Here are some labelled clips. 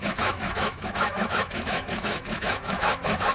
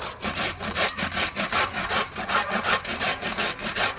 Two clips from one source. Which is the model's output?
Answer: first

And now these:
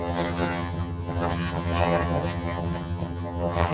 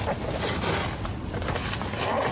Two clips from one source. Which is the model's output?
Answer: first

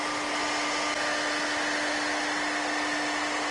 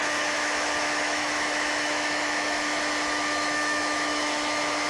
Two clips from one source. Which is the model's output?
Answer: second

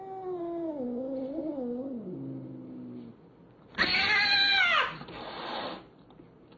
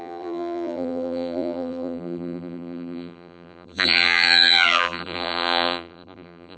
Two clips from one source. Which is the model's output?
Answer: second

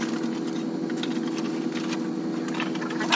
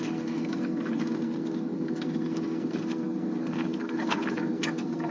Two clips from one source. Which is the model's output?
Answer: second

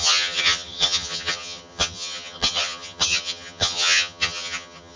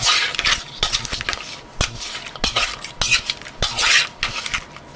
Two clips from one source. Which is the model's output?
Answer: first